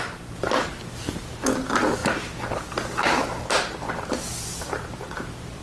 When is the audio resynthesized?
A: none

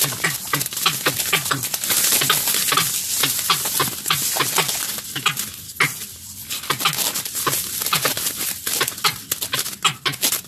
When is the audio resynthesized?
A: none

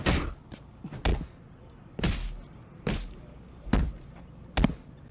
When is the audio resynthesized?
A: none

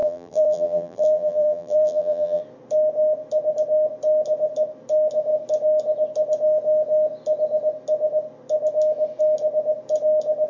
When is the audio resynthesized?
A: 0.0-2.4 (vocoder, BigVGAN v2)

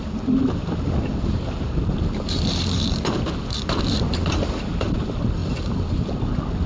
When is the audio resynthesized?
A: 1.1-4.7 (vocoder, BigVGAN v2); 5.4-6.3

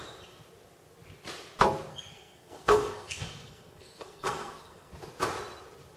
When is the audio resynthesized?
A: 1.9-4.9 (codec, SNAC)

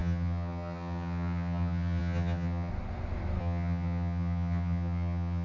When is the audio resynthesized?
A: 0.0-2.7 (vocoder, HiFi-GAN); 3.4-5.4

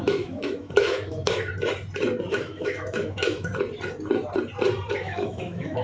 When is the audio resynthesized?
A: 0.0-1.5 (autoencoder, DAC-VAE); 2.3-3.5; 5.0-5.8